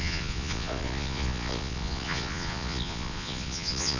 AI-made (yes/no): yes